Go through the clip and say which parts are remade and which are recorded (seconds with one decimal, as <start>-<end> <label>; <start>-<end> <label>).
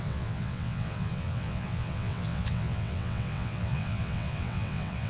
0.0-5.1 remade